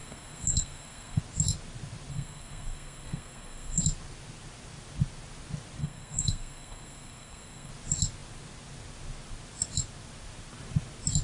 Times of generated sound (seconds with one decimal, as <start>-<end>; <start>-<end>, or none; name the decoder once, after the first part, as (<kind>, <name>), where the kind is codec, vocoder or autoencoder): 0.0-1.2 (codec, SNAC); 2.1-3.8; 5.8-7.7